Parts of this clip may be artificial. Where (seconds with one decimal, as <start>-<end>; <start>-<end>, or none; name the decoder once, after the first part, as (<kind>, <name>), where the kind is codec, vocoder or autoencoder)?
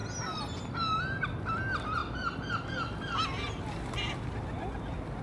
none